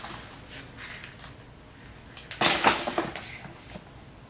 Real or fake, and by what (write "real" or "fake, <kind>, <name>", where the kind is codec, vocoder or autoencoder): real